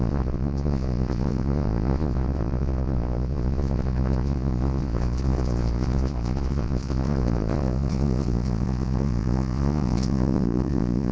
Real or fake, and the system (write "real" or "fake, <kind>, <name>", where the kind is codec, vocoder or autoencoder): fake, vocoder, Vocos